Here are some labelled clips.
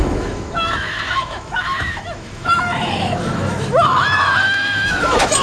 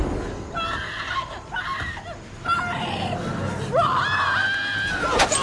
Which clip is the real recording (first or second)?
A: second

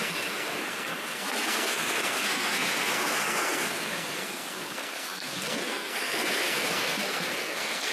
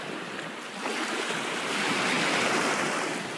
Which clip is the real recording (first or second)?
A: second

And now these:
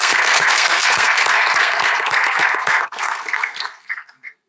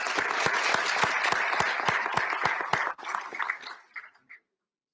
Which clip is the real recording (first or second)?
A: second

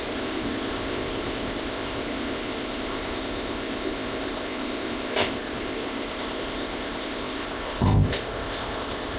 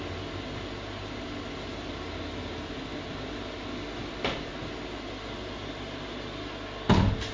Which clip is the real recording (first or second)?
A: second